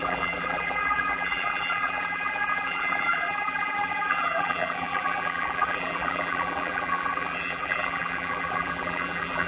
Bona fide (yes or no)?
no